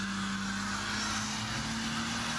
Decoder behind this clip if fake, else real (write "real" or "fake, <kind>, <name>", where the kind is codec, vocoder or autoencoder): real